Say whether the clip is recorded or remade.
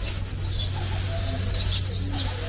recorded